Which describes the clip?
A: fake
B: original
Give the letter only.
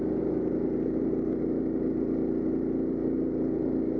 B